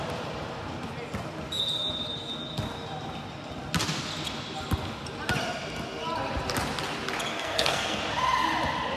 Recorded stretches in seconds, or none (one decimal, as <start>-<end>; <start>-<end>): 0.0-7.3; 8.0-9.0